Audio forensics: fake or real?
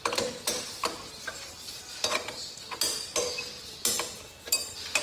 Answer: real